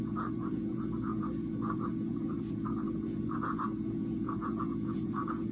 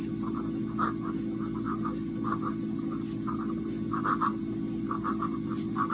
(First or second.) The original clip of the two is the second